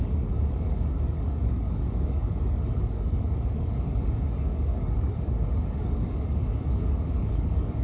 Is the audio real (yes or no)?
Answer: no